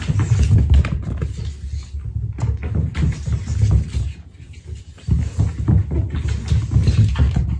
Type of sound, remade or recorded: recorded